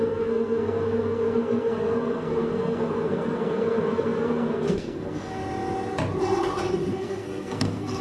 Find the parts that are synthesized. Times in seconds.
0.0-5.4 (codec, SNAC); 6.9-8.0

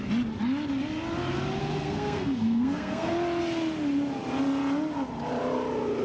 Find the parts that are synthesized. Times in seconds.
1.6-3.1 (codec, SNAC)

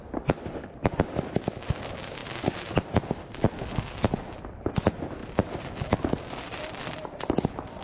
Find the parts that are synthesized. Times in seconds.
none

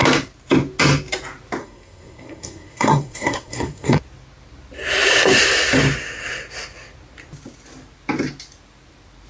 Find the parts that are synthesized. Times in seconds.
1.6-4.0 (codec, SNAC)